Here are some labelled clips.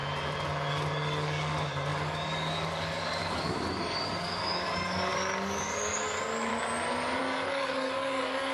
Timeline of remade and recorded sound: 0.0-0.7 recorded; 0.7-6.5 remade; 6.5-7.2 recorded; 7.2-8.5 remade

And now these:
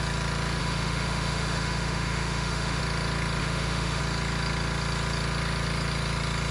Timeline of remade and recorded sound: 0.0-0.6 recorded; 0.6-2.8 remade; 2.8-3.4 recorded; 3.4-4.0 remade; 4.0-6.5 recorded

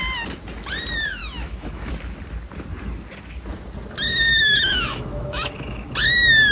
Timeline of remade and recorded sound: 0.0-1.2 recorded; 1.2-1.9 remade; 1.9-4.3 recorded; 4.3-5.9 remade; 5.9-6.5 recorded